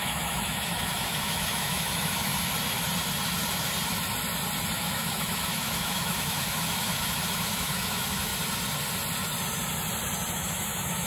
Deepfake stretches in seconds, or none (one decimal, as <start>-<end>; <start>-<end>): 0.0-2.3; 4.7-8.3; 10.3-11.1